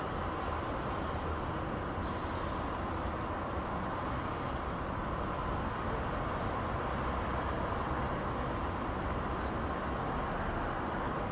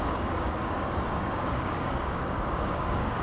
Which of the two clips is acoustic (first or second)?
first